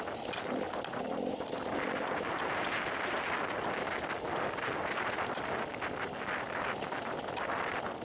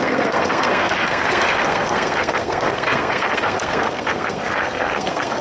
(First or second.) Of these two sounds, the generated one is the second